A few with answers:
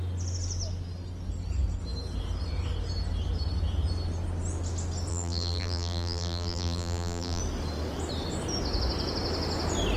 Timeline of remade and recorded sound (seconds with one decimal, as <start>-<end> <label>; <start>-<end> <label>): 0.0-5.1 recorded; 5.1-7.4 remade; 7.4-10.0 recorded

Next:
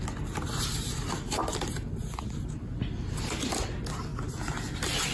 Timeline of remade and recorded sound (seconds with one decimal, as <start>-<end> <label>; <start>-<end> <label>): 0.0-5.1 recorded

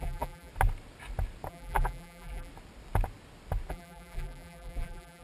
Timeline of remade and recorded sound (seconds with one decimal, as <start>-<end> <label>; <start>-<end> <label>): 0.0-0.5 remade; 0.5-1.5 recorded; 1.5-2.5 remade; 2.5-3.7 recorded; 3.7-5.2 remade

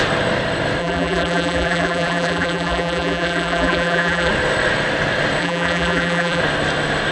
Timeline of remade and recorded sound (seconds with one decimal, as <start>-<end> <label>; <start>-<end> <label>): 0.0-0.8 recorded; 0.8-4.3 remade; 4.3-5.4 recorded; 5.4-6.4 remade; 6.4-7.1 recorded

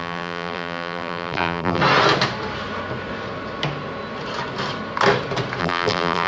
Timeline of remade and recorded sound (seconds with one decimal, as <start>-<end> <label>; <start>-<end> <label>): 0.0-1.8 remade; 1.8-5.6 recorded; 5.6-6.3 remade

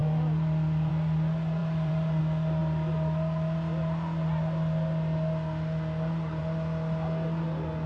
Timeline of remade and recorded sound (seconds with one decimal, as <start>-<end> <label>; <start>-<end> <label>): 0.0-0.9 remade; 0.9-1.6 recorded; 1.6-2.2 remade; 2.2-7.9 recorded

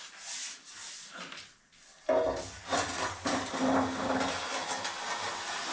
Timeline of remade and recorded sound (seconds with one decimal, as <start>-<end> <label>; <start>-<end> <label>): 0.0-5.7 recorded

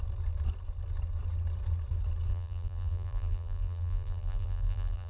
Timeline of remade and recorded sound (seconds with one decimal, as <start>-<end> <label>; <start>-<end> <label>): 0.0-2.3 recorded; 2.3-5.1 remade